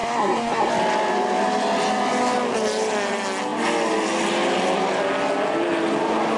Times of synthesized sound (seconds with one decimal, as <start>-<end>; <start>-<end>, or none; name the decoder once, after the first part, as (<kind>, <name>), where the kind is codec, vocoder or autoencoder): 0.0-0.7 (codec, SNAC)

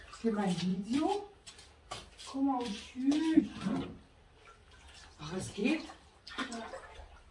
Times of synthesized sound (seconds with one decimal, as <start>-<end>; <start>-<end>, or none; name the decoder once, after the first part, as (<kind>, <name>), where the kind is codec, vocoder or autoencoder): none